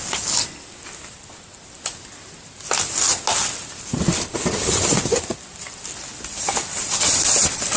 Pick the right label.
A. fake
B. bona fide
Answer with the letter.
B